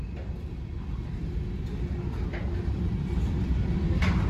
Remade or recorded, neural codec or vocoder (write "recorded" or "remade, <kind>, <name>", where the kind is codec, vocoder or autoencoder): recorded